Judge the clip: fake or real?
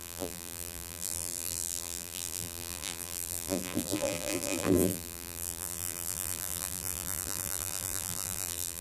fake